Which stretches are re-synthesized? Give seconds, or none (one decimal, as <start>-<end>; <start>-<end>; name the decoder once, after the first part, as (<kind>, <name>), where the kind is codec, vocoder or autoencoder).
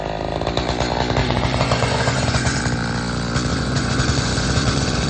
1.2-2.6 (vocoder, Vocos); 3.5-5.1